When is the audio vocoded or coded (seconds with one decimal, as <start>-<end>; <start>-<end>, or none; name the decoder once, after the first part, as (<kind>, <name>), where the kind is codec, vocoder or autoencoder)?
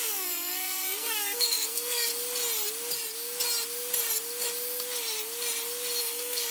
0.0-2.1 (codec, SNAC); 6.0-6.5